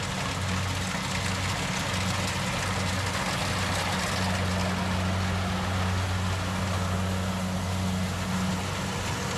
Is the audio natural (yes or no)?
yes